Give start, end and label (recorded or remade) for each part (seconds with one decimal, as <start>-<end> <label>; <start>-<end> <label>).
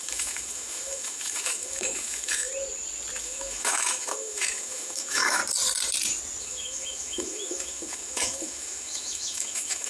0.0-2.5 remade; 2.5-3.2 recorded; 3.2-5.4 remade; 5.4-6.4 recorded; 6.4-9.9 remade